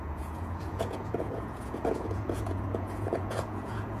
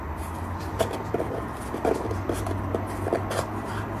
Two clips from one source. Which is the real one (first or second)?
second